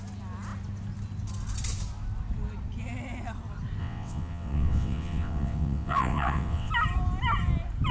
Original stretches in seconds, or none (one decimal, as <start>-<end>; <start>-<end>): 0.0-3.8; 6.7-7.9